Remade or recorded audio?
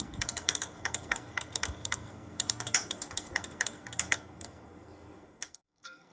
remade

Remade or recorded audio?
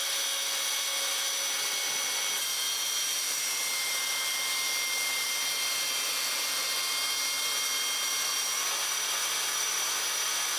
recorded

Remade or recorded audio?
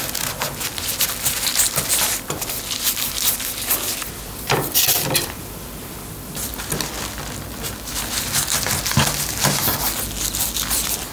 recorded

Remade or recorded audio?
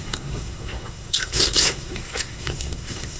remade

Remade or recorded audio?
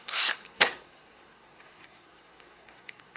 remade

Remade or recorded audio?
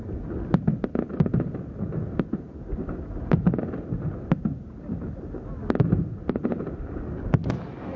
recorded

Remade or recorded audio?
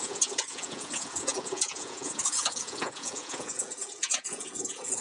remade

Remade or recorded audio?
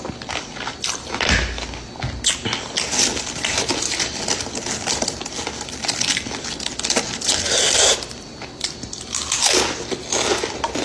recorded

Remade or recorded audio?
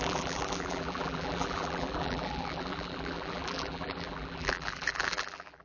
remade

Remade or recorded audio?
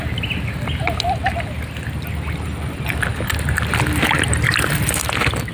recorded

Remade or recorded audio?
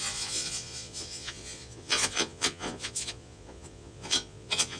remade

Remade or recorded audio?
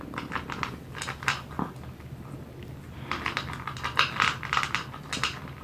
recorded